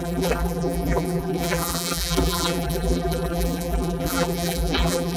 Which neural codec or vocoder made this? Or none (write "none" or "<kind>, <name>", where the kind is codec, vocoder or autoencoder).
vocoder, BigVGAN v2